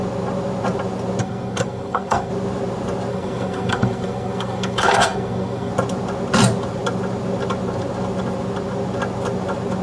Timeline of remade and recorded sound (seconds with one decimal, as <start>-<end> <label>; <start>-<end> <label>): 0.0-1.2 recorded; 1.2-2.3 remade; 2.3-3.1 recorded; 3.1-5.7 remade; 5.7-9.8 recorded